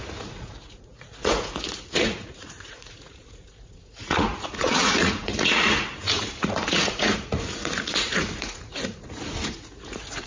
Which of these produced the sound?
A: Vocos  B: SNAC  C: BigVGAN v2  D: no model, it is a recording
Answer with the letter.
A